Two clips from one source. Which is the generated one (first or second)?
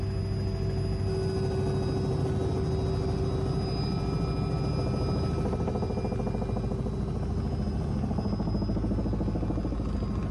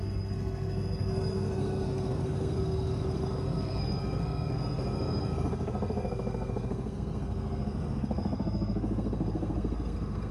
second